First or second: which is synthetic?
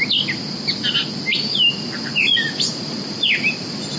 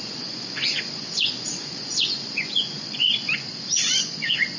second